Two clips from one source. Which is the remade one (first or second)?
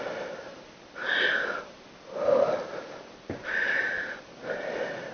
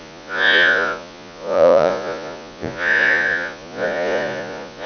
second